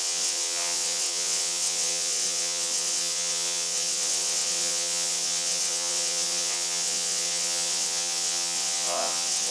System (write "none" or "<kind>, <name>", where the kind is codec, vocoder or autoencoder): vocoder, WaveNeXt